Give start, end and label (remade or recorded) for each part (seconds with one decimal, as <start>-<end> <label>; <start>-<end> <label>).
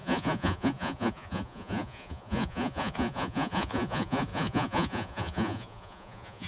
0.0-6.5 remade